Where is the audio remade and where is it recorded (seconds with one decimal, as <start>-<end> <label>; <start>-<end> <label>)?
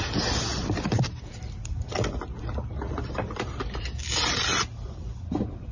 0.0-0.5 recorded; 0.5-3.8 remade; 3.8-5.7 recorded